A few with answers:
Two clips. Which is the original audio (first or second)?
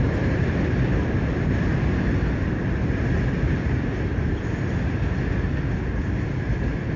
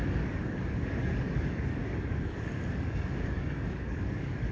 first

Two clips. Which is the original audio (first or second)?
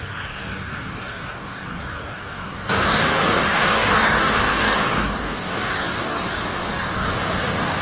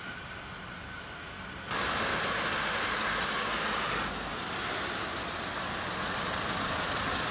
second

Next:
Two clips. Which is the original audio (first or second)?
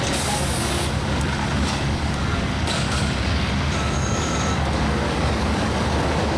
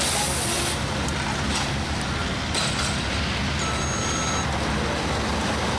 second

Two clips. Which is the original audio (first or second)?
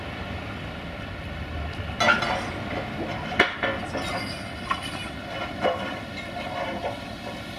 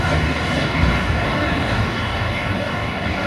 first